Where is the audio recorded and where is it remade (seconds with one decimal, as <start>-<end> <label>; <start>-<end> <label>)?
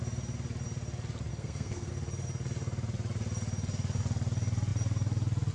0.0-1.3 recorded; 1.3-1.9 remade; 1.9-5.5 recorded